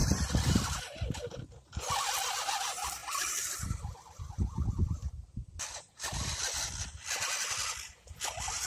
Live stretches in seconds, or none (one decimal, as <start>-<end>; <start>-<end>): 1.1-3.0; 6.4-8.7